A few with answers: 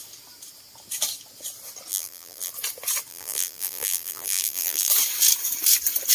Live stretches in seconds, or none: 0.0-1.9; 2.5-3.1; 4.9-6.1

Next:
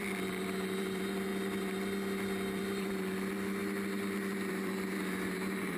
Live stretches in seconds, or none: 1.3-2.6

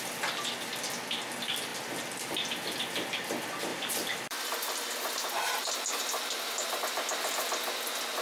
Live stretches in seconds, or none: 0.0-3.7; 6.8-8.2

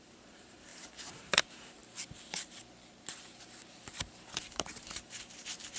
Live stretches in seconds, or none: 1.8-4.4

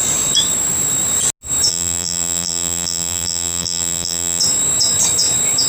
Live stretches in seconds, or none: 0.0-1.7; 4.4-5.7

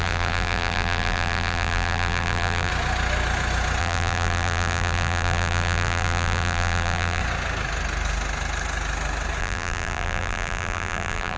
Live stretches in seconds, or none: 2.7-3.8; 7.2-9.4

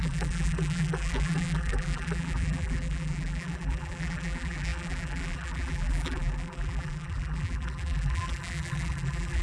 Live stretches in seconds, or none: none